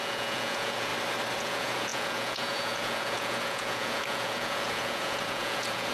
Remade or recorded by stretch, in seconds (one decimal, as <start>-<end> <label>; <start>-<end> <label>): 0.0-0.9 remade; 0.9-1.4 recorded; 1.4-5.9 remade